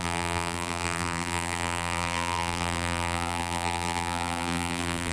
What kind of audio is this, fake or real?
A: fake